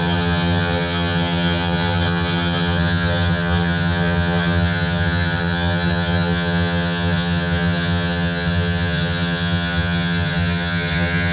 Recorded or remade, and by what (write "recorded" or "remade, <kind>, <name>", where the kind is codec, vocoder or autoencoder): remade, vocoder, HiFi-GAN